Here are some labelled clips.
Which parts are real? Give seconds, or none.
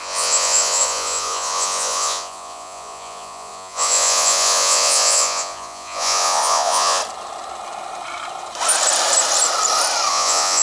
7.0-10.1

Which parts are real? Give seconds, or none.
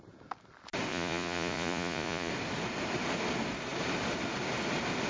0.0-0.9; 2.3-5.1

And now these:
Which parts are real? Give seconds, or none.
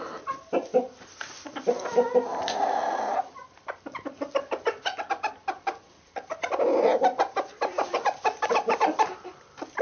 none